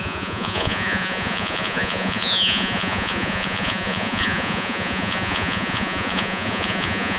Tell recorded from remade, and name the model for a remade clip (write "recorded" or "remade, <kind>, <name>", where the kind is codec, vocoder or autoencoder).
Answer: remade, vocoder, Vocos